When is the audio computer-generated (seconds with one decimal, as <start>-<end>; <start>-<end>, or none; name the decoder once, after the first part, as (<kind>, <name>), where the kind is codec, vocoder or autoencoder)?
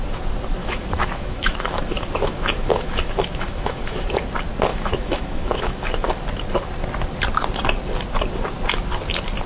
0.6-4.1 (autoencoder, DAC-VAE); 4.7-6.1